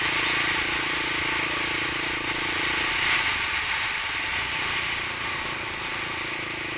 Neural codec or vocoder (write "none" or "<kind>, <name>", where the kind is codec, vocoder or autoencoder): none